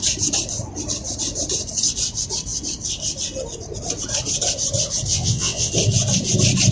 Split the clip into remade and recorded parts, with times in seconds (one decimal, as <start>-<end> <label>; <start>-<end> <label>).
0.0-5.1 recorded; 5.1-5.7 remade; 5.7-6.7 recorded